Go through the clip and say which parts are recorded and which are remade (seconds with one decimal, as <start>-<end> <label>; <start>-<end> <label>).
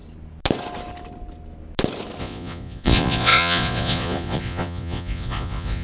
0.0-2.2 recorded; 2.2-5.8 remade